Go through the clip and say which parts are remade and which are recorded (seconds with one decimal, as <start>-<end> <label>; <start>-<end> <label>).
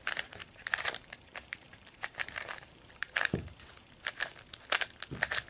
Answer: 0.0-0.4 recorded; 0.4-3.3 remade; 3.3-5.5 recorded